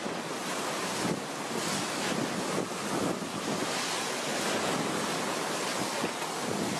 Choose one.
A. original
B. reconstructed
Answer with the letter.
A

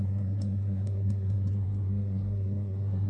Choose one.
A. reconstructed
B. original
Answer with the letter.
A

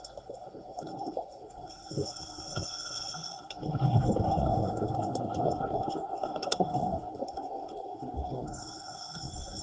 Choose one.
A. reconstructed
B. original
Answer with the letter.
A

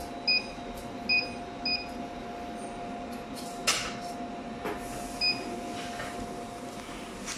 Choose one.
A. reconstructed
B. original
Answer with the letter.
B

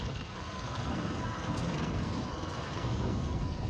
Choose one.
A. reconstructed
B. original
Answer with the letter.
A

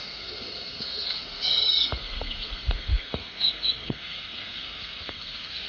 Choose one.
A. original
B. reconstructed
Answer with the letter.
B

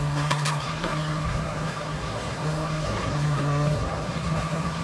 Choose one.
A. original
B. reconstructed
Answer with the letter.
B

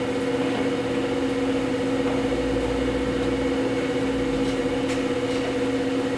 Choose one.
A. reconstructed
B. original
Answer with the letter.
B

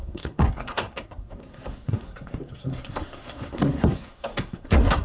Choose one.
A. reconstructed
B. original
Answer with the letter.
A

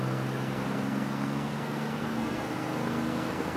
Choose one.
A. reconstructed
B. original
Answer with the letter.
A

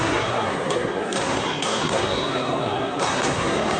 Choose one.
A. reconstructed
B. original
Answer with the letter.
A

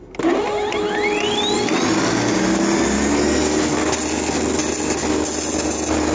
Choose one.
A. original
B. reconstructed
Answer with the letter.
A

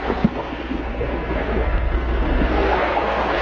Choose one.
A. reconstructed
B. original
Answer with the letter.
A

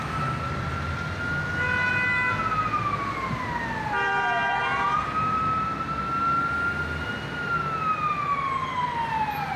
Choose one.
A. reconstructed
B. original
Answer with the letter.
B